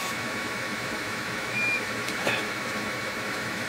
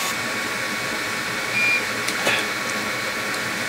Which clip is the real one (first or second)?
second